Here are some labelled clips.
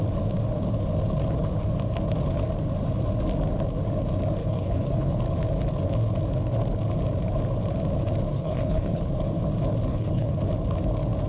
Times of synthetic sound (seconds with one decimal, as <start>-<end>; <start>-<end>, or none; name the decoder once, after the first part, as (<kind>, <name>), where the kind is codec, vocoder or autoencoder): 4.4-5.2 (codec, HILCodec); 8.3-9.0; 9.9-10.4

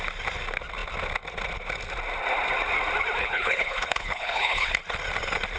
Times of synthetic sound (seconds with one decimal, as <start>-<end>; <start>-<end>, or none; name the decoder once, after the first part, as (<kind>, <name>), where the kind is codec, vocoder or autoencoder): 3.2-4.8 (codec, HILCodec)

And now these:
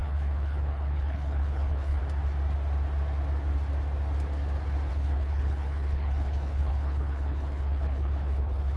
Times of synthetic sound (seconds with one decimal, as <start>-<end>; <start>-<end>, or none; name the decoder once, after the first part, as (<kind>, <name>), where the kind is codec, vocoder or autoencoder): 0.0-2.0 (codec, HILCodec); 4.9-8.8